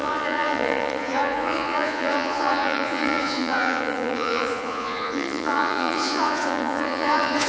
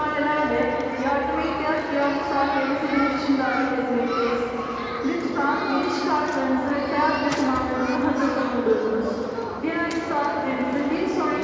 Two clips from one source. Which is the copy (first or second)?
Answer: first